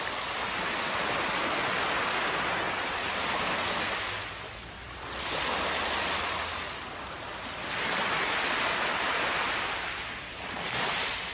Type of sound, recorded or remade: recorded